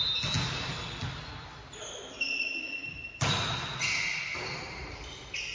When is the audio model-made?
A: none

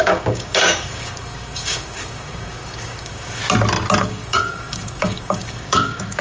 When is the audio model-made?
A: 0.0-3.4 (codec, DAC); 4.0-6.2

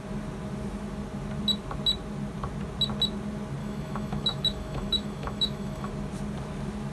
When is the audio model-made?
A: 3.6-5.9 (autoencoder, DAC-VAE)

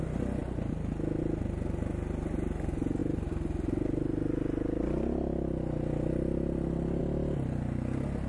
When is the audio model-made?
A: none

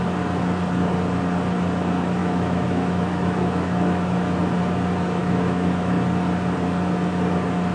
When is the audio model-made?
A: 2.2-4.4 (autoencoder, DAC-VAE); 5.2-5.9

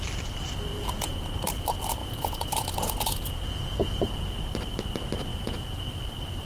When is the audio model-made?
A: 0.7-1.2 (vocoder, Vocos); 2.0-4.2; 5.3-5.8

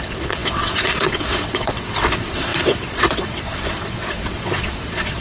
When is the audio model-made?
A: 0.0-5.2 (vocoder, WaveNeXt)

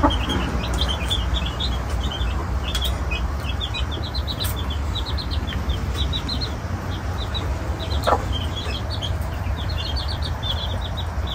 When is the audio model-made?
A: 2.4-4.4 (vocoder, BigVGAN v2); 7.5-10.2